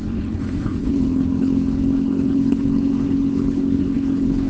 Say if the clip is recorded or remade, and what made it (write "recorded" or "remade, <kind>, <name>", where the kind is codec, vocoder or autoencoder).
remade, codec, HILCodec